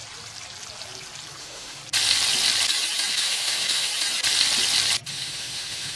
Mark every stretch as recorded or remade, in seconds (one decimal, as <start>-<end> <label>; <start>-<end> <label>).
0.0-1.4 recorded; 1.4-1.8 remade; 1.8-3.1 recorded; 3.1-3.9 remade; 3.9-5.1 recorded; 5.1-6.0 remade